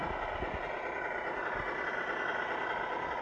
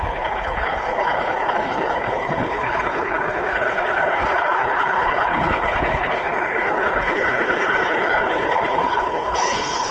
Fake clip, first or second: second